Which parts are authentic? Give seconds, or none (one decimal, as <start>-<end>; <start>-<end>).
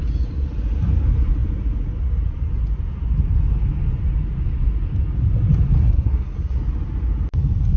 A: 0.0-5.8; 6.6-7.8